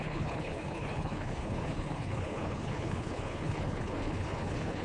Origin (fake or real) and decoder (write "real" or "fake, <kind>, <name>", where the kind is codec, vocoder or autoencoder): fake, codec, HILCodec